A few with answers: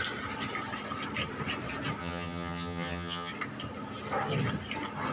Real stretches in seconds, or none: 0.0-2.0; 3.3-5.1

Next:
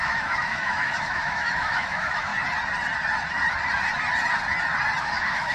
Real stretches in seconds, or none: 2.3-5.0